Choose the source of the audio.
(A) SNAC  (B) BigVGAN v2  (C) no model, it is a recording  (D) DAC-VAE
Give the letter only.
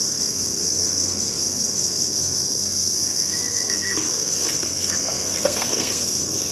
A